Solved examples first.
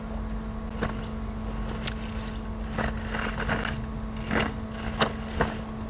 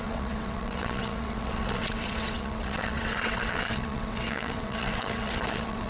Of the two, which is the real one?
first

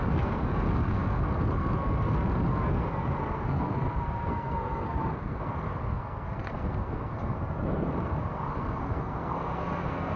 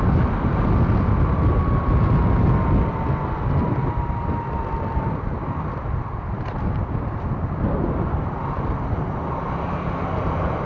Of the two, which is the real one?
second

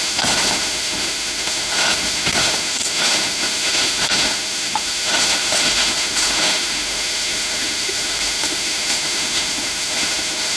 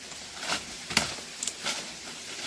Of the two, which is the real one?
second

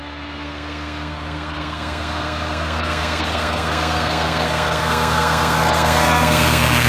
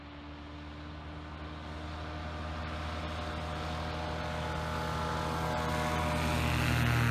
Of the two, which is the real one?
second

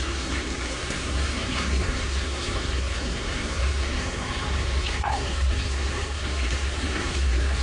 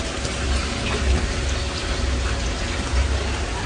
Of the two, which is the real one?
second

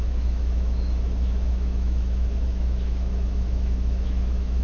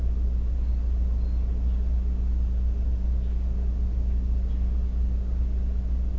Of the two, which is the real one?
second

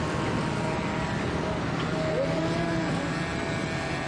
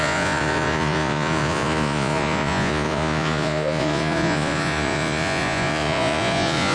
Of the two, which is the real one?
first